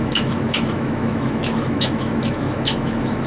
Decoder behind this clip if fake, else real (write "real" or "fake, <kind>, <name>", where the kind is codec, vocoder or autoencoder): fake, autoencoder, DAC-VAE